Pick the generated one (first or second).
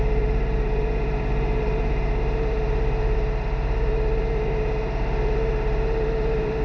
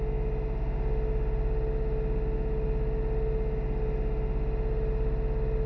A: first